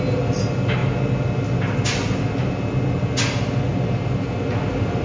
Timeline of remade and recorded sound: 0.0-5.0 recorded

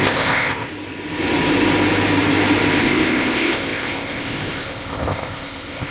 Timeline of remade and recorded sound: 0.0-0.7 remade; 0.7-2.8 recorded; 2.8-5.9 remade

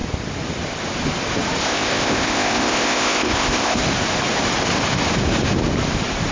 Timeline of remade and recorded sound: 0.0-1.6 recorded; 1.6-3.8 remade; 3.8-6.3 recorded